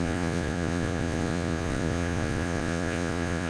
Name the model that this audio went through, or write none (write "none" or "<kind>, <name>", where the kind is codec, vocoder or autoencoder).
vocoder, Vocos